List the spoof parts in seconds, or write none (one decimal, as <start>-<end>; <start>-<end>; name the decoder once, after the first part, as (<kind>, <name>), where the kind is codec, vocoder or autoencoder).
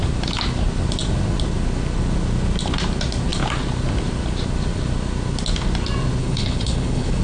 6.2-7.2 (codec, HILCodec)